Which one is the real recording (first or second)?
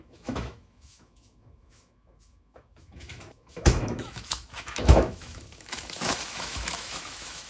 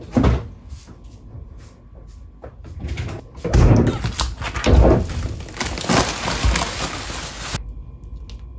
second